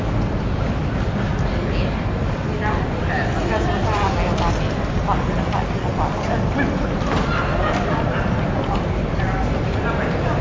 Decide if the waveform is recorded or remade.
recorded